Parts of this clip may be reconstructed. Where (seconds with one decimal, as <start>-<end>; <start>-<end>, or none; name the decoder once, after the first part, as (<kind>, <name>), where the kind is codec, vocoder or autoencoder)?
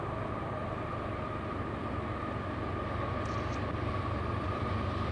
0.0-0.6 (vocoder, BigVGAN v2); 3.7-5.1